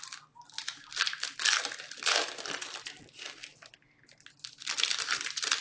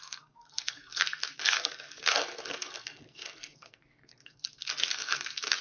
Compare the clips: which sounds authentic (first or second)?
first